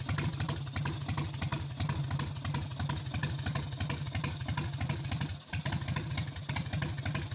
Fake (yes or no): no